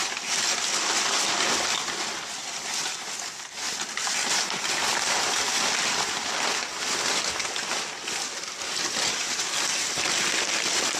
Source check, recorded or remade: recorded